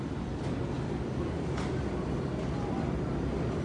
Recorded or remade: recorded